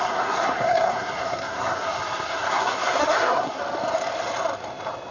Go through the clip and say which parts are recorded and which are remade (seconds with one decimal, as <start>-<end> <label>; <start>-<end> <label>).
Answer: 0.0-3.6 remade; 3.6-5.1 recorded